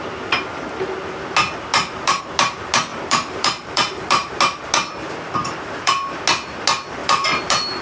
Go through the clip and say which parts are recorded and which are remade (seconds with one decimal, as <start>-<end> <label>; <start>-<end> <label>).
0.0-1.7 recorded; 1.7-2.2 remade; 2.2-2.9 recorded; 2.9-4.4 remade; 4.4-5.4 recorded; 5.4-5.9 remade; 5.9-7.0 recorded; 7.0-7.8 remade